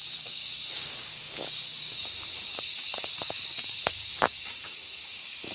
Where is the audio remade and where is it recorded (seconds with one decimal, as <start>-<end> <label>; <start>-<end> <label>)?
0.0-5.5 remade

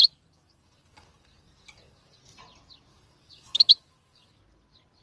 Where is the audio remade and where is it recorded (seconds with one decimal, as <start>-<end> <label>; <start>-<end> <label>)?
0.0-2.2 remade; 2.2-2.9 recorded; 2.9-4.4 remade; 4.4-5.0 recorded

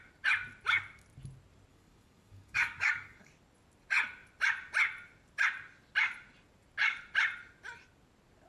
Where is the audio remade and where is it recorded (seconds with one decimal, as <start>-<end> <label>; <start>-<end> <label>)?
0.0-1.7 recorded; 1.7-3.3 remade; 3.3-8.5 recorded